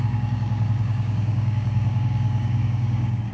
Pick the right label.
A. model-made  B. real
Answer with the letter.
A